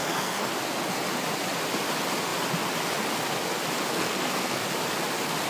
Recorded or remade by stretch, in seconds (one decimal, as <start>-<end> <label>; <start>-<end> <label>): 0.0-0.5 remade; 0.5-3.9 recorded; 3.9-4.6 remade; 4.6-5.5 recorded